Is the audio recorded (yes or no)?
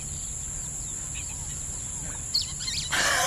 no